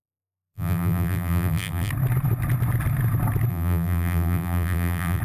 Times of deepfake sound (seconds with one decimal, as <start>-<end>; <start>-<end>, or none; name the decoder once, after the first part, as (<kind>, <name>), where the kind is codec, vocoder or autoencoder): 0.0-1.9 (vocoder, BigVGAN v2); 3.5-5.2